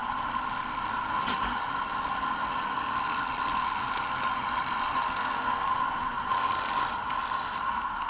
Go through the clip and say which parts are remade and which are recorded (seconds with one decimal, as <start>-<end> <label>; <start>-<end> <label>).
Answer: 0.0-3.2 recorded; 3.2-5.0 remade; 5.0-6.3 recorded; 6.3-8.1 remade